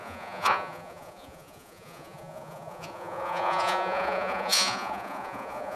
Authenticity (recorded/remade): remade